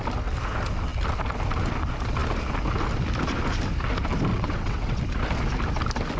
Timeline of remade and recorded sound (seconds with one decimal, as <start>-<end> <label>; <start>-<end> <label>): 0.0-4.3 recorded; 4.3-5.0 remade; 5.0-6.2 recorded